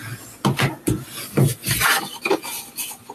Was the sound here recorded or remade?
recorded